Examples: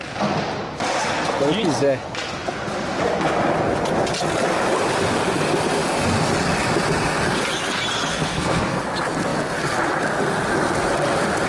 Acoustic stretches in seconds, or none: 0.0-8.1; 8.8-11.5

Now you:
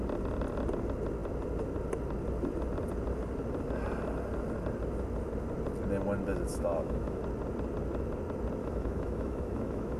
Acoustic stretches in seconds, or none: 0.0-6.5; 7.2-8.6

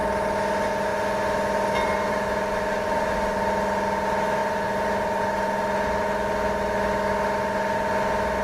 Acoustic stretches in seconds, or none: 0.0-8.4